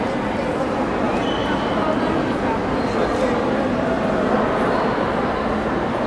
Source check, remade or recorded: recorded